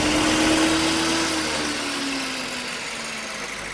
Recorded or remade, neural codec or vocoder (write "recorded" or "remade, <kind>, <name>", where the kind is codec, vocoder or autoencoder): recorded